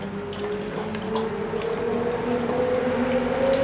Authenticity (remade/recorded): recorded